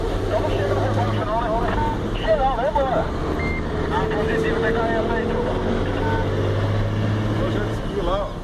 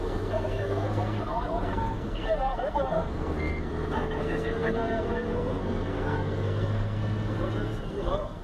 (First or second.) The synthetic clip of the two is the second